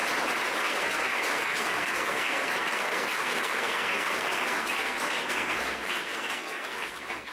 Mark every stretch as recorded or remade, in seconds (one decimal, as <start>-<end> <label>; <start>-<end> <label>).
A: 0.0-0.6 recorded; 0.6-7.3 remade